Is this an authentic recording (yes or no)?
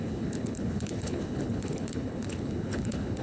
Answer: no